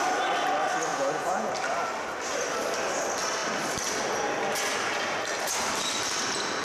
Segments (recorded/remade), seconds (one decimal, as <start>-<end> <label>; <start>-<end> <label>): 0.0-0.9 recorded; 0.9-1.5 remade; 1.5-6.6 recorded